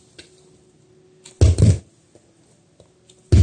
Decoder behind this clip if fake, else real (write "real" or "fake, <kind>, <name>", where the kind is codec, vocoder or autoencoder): real